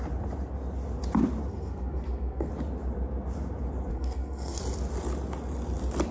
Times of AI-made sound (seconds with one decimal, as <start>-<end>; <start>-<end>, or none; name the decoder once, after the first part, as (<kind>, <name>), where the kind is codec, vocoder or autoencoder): 1.5-2.5 (codec, SNAC); 3.9-4.6